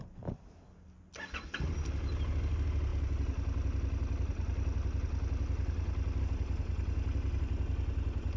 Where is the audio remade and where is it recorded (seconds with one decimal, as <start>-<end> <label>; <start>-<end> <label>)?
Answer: 0.0-8.4 recorded